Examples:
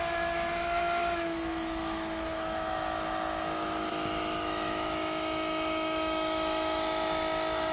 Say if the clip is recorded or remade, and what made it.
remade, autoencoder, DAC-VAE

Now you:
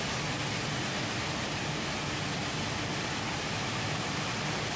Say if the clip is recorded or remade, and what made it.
recorded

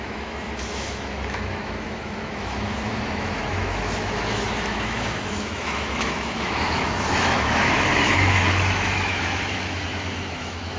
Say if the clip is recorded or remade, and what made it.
remade, autoencoder, DAC-VAE